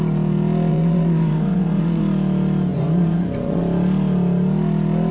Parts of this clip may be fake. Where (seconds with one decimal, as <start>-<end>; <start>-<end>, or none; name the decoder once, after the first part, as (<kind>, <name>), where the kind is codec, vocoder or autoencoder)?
0.7-2.0 (vocoder, Vocos); 2.7-3.6